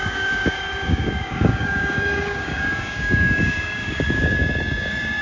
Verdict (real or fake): fake